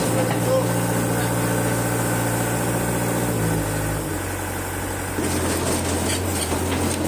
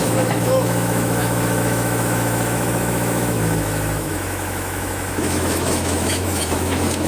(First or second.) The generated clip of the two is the second